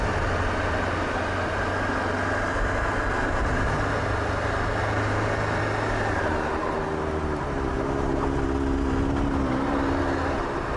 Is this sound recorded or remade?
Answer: recorded